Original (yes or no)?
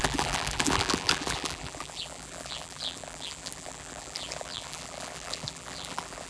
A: no